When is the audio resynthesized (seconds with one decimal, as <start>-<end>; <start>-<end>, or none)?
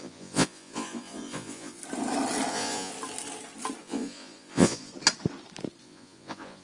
0.0-1.8; 2.5-2.9; 3.8-4.9; 5.8-6.6